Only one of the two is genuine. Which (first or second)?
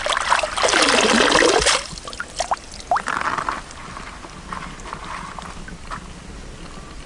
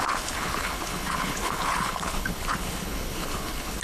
first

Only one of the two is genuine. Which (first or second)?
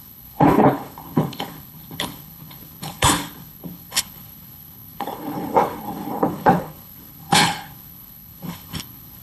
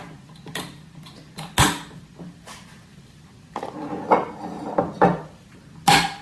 second